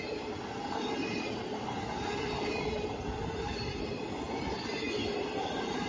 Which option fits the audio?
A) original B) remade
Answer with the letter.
A